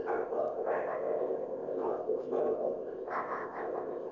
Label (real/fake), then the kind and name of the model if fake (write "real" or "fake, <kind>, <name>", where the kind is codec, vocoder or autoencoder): fake, codec, ZipCodec